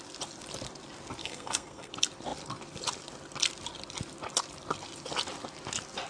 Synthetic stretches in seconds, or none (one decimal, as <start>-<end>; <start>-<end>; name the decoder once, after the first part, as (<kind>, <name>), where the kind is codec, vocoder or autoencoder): 1.2-1.9 (codec, SNAC)